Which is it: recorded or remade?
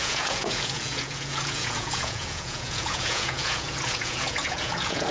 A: remade